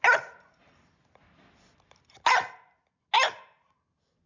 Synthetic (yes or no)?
no